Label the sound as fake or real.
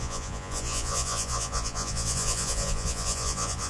fake